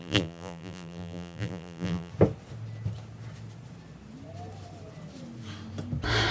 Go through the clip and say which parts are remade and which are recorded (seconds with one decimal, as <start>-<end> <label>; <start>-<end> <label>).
0.0-2.1 remade; 2.1-6.3 recorded